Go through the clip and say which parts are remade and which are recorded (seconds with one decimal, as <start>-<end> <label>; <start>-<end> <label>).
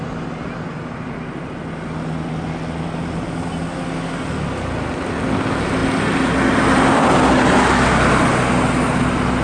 0.0-9.4 recorded